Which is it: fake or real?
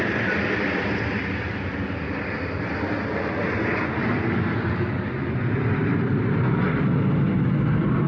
real